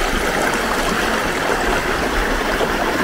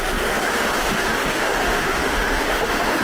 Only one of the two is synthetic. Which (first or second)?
second